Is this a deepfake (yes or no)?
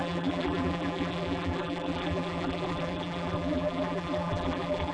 yes